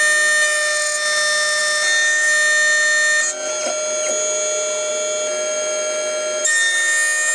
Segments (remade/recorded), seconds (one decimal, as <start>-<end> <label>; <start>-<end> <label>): 0.0-7.3 recorded